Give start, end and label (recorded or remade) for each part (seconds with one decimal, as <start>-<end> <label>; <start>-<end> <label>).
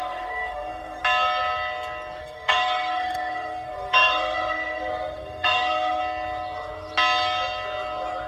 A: 0.0-1.0 remade; 1.0-2.2 recorded; 2.2-6.0 remade; 6.0-8.3 recorded